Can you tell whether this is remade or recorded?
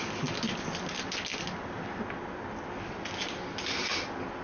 recorded